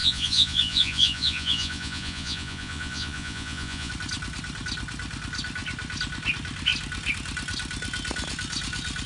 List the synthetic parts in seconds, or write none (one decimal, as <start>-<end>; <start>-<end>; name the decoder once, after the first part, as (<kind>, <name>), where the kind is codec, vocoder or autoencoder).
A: 0.0-3.9 (vocoder, Vocos)